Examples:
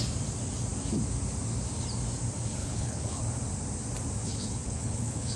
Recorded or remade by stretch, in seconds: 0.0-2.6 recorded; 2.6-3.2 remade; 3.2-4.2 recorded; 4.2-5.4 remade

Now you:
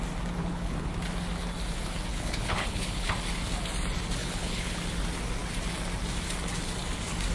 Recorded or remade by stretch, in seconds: 0.0-0.4 recorded; 0.4-0.9 remade; 0.9-2.1 recorded; 2.1-3.1 remade; 3.1-4.2 recorded; 4.2-4.8 remade; 4.8-7.3 recorded

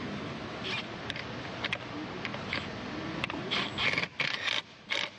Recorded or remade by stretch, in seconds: 0.0-5.2 recorded

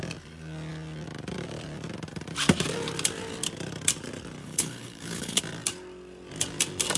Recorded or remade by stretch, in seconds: 0.0-4.4 recorded; 4.4-5.4 remade; 5.4-7.0 recorded

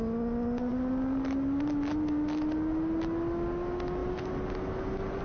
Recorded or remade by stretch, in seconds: 0.0-5.2 recorded

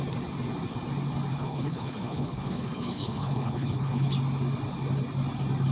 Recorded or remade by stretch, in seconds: 0.0-1.3 recorded; 1.3-4.1 remade; 4.1-5.7 recorded

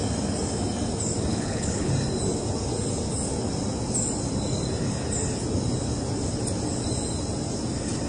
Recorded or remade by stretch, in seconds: 0.0-1.3 recorded; 1.3-1.9 remade; 1.9-8.1 recorded